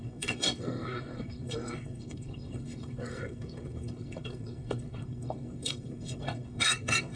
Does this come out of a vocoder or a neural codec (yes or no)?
yes